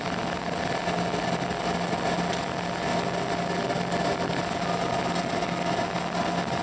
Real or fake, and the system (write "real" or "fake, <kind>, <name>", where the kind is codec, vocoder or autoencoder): real